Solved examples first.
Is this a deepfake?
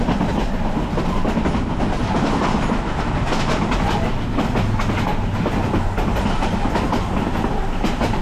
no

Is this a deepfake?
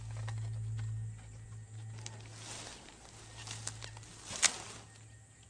no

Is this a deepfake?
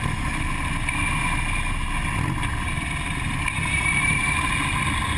no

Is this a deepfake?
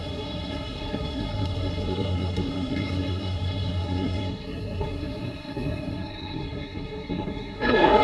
yes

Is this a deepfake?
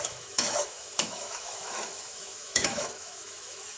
yes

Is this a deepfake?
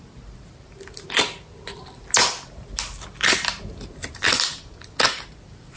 no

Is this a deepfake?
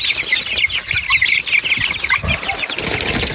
no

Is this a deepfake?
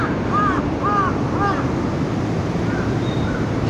no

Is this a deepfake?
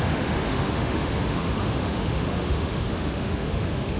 yes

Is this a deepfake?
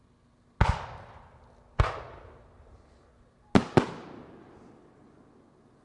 no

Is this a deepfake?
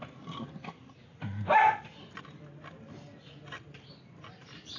no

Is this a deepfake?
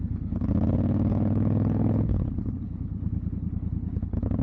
yes